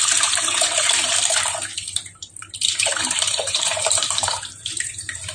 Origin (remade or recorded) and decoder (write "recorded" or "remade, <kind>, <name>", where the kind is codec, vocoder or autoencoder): remade, vocoder, BigVGAN v2